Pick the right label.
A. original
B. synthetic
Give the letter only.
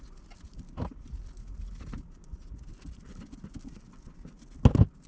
A